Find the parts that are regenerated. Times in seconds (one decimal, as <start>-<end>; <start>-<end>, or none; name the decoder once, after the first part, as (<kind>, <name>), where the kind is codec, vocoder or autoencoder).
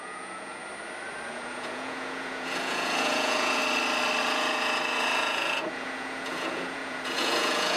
0.0-0.6 (vocoder, Vocos); 1.3-3.6; 4.2-7.8